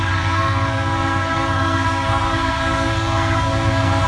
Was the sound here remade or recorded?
remade